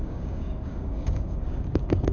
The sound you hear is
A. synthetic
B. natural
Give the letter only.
A